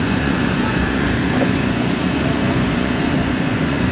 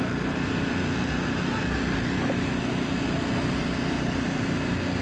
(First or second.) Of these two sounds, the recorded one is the second